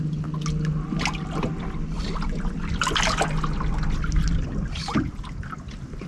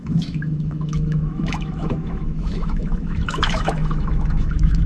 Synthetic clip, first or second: second